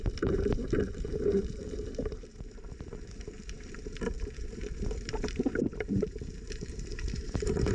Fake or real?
fake